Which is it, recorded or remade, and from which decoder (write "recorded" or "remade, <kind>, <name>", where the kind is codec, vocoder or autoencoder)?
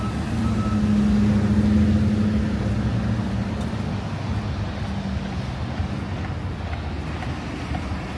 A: recorded